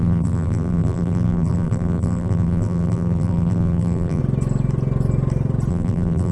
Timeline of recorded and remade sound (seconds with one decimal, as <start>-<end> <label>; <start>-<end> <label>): 0.0-4.2 remade; 4.2-5.7 recorded; 5.7-6.3 remade